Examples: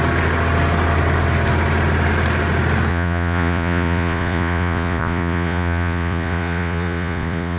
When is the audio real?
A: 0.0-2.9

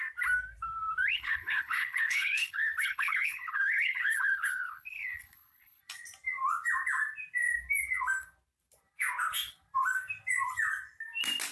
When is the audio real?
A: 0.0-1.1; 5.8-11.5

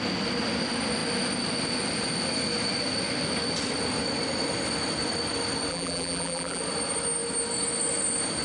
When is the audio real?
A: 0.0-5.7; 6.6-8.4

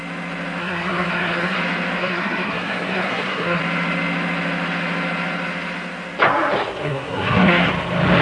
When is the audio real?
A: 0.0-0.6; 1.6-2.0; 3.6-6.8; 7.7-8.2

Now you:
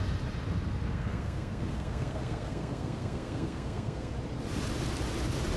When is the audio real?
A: 0.0-0.9; 4.1-5.6

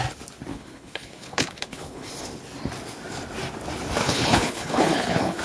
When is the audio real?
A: 0.0-0.5; 2.1-4.0

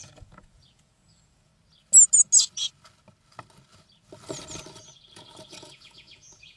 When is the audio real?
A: 1.5-5.5